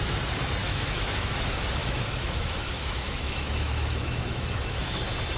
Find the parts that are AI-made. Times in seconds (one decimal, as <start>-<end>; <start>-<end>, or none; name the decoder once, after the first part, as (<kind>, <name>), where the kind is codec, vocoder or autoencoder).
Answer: 0.6-1.4 (autoencoder, DAC-VAE); 1.8-5.0